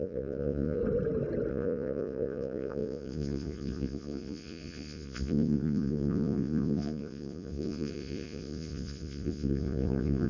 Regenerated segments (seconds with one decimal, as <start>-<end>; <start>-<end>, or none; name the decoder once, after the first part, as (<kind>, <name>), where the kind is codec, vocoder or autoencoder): 0.0-0.8 (vocoder, Vocos); 1.5-10.3